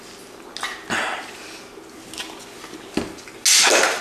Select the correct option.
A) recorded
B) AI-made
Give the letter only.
A